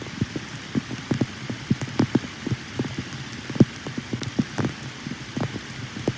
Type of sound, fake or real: real